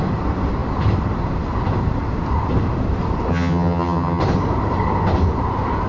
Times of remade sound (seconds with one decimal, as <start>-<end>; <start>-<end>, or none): 3.3-4.2

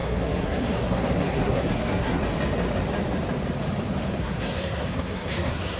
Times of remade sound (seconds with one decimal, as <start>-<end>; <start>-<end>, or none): 0.0-2.2; 4.2-5.8

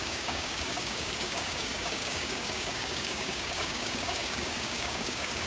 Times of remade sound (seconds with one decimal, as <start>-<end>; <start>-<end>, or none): 0.0-5.5

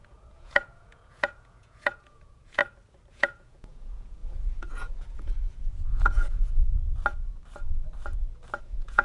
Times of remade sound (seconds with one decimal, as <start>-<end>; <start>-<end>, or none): 0.0-2.6; 3.1-6.6; 8.6-9.0

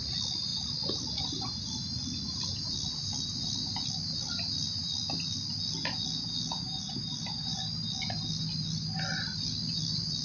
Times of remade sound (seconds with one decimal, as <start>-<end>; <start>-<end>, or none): none

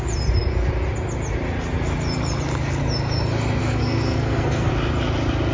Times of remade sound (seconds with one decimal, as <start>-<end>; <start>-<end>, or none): 3.6-4.7